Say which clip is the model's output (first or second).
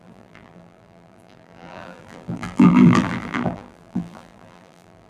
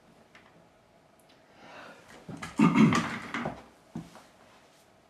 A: first